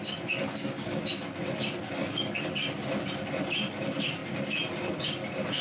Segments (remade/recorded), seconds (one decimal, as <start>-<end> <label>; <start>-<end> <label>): 0.0-0.4 recorded; 0.4-1.0 remade; 1.0-2.0 recorded; 2.0-2.5 remade; 2.5-5.6 recorded